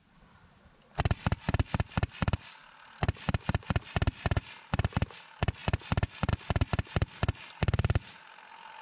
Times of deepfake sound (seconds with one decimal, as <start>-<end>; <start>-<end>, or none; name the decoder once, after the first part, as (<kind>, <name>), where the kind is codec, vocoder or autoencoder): none